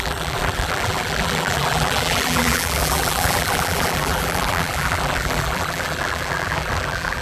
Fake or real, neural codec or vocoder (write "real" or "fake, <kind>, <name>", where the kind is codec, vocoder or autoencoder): fake, vocoder, BigVGAN v2